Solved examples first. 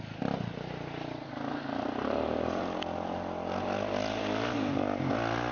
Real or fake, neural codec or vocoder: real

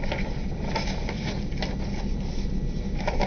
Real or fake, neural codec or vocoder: real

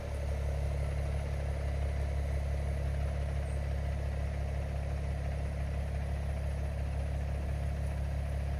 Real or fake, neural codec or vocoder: real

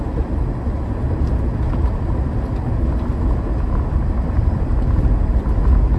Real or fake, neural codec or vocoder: real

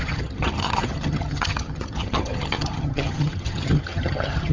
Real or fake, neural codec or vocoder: fake, vocoder, HiFi-GAN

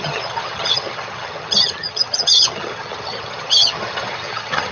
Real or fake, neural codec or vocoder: fake, vocoder, HiFi-GAN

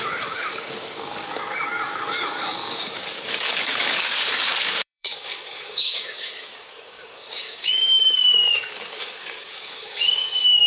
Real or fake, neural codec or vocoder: fake, codec, DAC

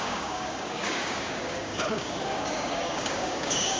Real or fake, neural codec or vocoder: fake, codec, DAC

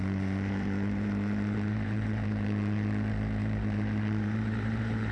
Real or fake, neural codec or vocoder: fake, vocoder, BigVGAN v2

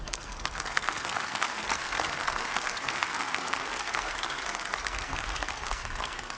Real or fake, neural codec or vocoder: fake, codec, SNAC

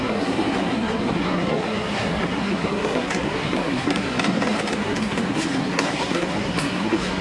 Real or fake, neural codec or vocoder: fake, codec, SNAC